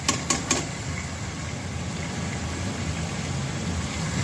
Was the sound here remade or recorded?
recorded